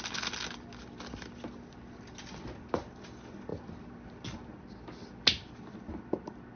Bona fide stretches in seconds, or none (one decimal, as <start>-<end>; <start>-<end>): 0.0-6.6